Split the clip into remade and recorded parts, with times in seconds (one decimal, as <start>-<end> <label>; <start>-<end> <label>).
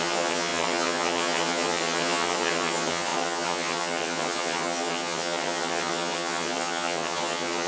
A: 0.0-7.7 remade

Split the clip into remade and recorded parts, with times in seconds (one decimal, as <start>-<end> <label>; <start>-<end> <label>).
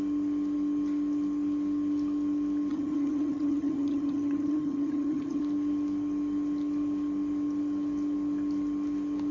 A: 0.0-2.7 recorded; 2.7-5.4 remade; 5.4-9.3 recorded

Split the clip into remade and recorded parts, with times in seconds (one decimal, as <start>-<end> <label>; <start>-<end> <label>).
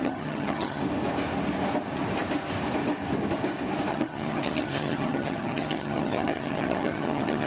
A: 0.0-0.8 remade; 0.8-3.9 recorded; 3.9-7.5 remade